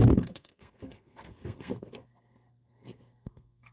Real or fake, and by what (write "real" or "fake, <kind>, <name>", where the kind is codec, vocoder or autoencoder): fake, codec, SNAC